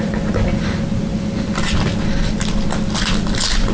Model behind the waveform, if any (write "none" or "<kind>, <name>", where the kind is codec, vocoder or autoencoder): none